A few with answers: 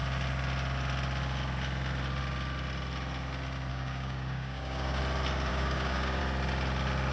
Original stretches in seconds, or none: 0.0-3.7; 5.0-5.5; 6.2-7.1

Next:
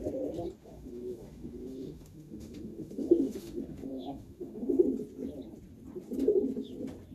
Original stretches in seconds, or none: 0.0-0.6; 4.8-7.1

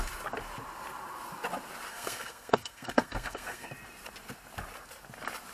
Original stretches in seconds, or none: 0.0-1.9; 3.7-5.5

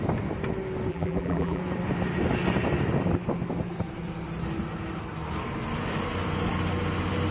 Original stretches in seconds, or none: 0.0-0.9; 1.6-7.3

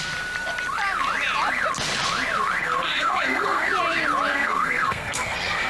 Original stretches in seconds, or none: 0.0-2.6; 3.7-4.3

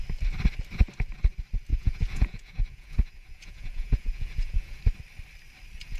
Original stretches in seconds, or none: 0.0-1.7; 4.8-6.0

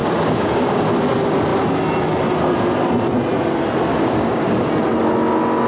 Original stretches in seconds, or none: 0.8-3.9; 4.7-5.7

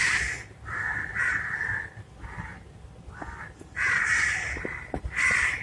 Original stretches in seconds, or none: 0.0-5.6